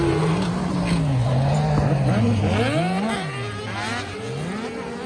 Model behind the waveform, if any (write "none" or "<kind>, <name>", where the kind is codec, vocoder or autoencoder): none